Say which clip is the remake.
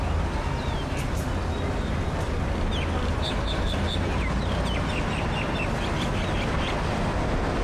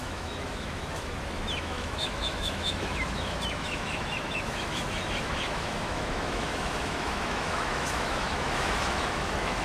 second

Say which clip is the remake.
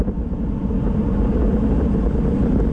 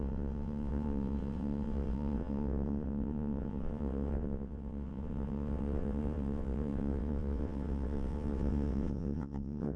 second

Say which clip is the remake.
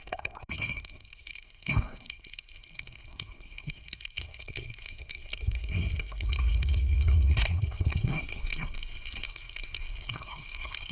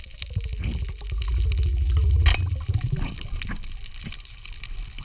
first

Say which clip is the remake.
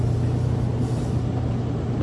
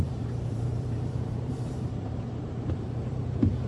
second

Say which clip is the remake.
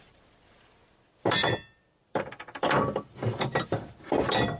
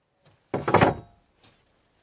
first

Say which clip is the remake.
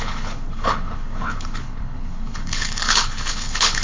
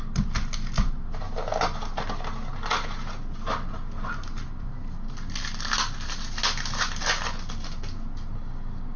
first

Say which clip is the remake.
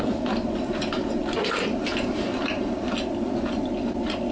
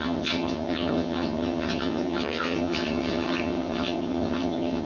second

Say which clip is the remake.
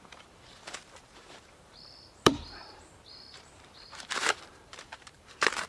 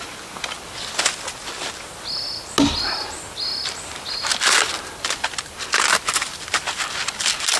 first